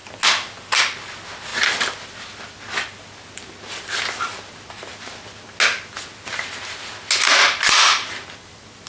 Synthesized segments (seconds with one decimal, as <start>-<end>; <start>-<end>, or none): none